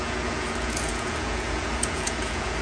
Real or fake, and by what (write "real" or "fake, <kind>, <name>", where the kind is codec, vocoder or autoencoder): fake, vocoder, Vocos